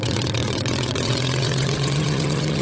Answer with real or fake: fake